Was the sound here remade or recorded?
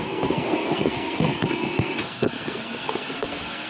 remade